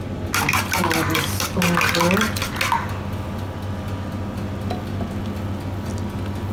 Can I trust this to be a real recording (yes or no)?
yes